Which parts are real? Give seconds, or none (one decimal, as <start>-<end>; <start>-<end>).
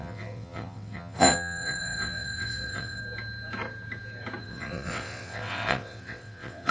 3.0-4.4